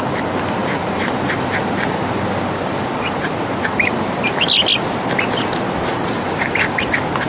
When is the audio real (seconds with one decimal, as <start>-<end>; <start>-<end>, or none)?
0.0-7.3